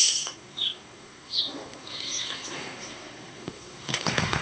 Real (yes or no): no